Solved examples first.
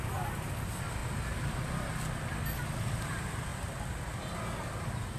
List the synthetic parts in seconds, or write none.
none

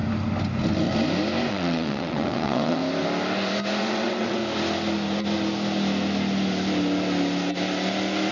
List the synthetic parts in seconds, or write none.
1.5-2.8; 3.8-4.4